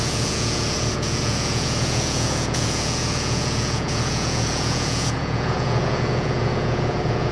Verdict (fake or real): fake